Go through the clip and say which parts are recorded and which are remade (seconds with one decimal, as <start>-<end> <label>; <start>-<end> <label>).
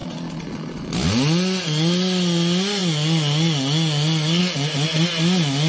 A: 0.0-0.9 remade; 0.9-5.7 recorded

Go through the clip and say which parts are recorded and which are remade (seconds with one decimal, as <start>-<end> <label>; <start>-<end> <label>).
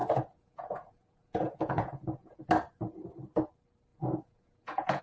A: 0.0-2.4 remade; 2.4-3.9 recorded; 3.9-5.0 remade